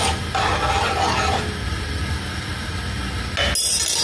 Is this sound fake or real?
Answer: real